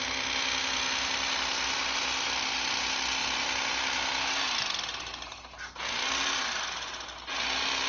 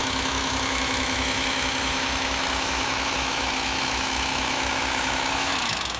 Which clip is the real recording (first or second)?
first